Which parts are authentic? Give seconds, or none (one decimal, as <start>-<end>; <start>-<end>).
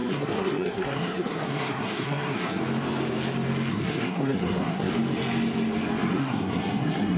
2.6-3.7; 4.9-6.1